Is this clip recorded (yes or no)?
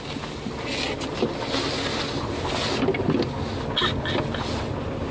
yes